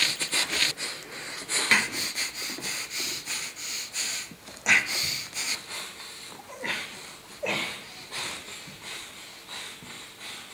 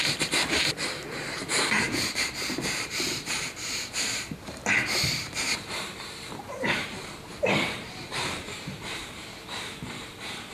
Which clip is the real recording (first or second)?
first